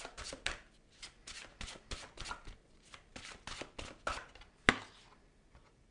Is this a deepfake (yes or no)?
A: no